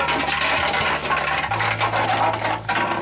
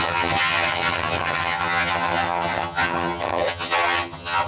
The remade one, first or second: second